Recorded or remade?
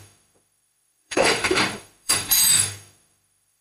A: remade